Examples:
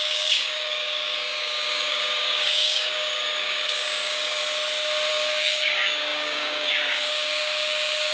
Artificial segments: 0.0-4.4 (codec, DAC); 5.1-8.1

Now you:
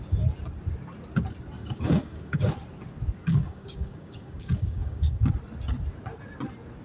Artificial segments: 1.6-2.5 (codec, DAC); 3.2-5.3

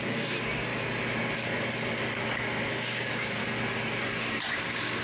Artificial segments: 0.0-0.7 (codec, DAC); 2.7-3.4; 4.5-5.0

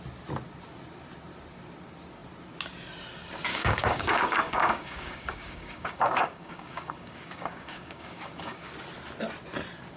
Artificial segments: 3.5-8.7 (codec, DAC)